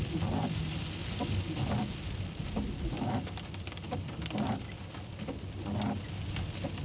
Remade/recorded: recorded